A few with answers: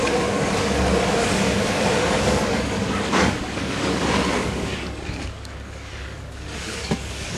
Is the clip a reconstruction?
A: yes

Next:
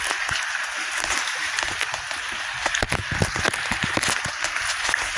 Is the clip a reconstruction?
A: no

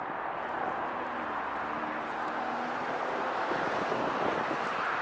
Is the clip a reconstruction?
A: no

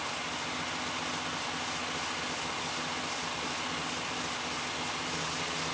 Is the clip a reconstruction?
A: no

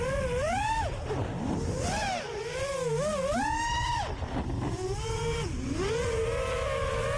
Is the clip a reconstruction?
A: no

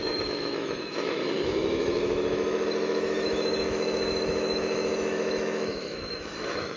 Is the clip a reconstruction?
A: yes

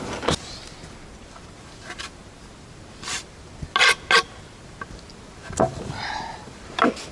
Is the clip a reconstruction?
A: no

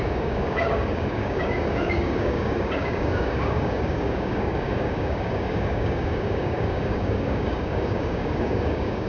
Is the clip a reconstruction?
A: yes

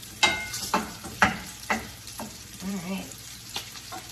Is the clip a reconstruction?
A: yes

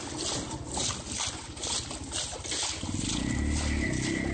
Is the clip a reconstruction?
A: no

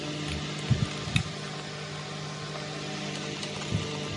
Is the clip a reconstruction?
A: no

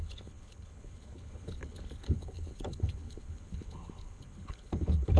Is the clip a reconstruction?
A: yes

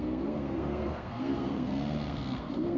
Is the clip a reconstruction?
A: yes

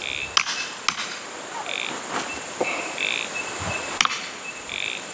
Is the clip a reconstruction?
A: no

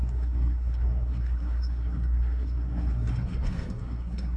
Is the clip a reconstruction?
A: yes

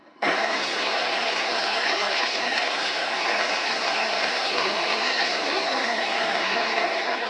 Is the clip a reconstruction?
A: yes